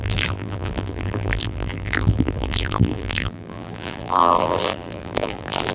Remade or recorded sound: remade